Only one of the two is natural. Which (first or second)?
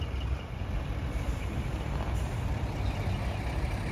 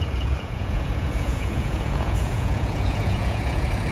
first